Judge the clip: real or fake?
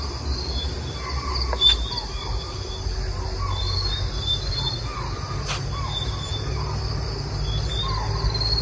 real